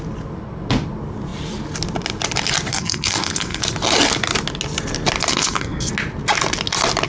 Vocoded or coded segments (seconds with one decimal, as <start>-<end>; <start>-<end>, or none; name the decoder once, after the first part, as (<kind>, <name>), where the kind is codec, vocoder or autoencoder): 2.7-3.6 (codec, SNAC); 5.3-5.9